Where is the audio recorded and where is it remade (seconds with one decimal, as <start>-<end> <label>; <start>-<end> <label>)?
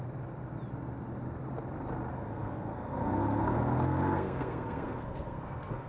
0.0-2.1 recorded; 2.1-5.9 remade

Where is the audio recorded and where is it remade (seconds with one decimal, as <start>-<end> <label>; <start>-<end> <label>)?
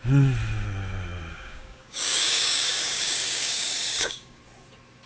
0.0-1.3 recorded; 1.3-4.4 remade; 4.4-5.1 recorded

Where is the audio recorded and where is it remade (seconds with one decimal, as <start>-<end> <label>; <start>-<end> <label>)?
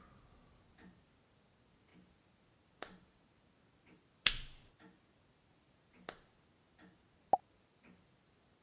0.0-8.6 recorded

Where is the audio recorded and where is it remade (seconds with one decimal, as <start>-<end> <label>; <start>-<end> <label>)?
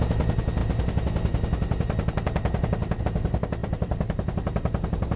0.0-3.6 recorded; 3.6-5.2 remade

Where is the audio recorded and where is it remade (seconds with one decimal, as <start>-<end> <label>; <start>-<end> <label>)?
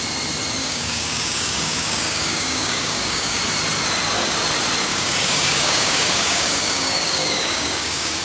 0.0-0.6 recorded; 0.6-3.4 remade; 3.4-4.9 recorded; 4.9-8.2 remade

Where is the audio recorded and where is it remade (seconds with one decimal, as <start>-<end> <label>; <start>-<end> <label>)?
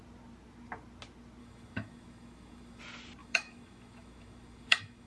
0.0-1.4 recorded; 1.4-2.8 remade; 2.8-3.2 recorded; 3.2-5.1 remade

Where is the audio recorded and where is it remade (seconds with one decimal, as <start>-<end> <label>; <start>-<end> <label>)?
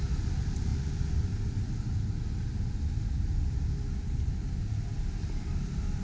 0.0-6.0 recorded